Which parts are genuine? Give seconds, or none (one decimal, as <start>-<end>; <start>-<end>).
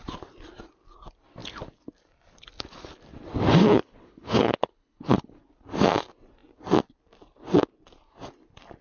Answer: 0.0-3.7; 5.4-8.8